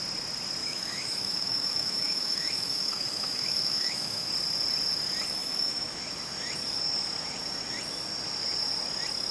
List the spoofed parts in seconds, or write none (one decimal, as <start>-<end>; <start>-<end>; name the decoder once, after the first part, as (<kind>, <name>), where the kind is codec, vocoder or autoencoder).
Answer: 0.6-4.3 (autoencoder, DAC-VAE); 5.4-6.0